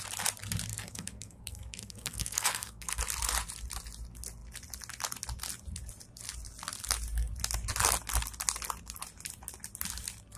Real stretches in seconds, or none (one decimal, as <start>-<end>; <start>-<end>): 0.0-0.7; 3.0-10.4